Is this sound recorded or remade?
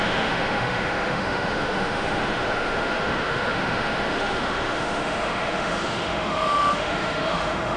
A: remade